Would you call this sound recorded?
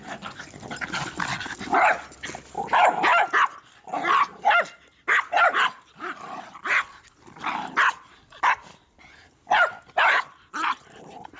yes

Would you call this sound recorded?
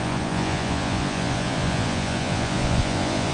no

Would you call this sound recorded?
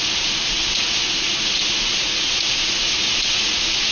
no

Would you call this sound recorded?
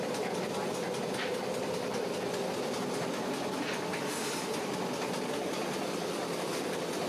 yes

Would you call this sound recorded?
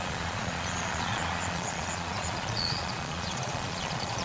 no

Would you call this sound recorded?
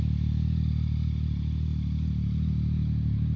yes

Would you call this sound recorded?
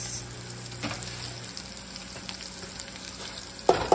yes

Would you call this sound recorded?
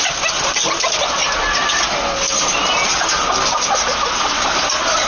yes